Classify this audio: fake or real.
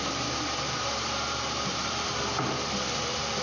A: fake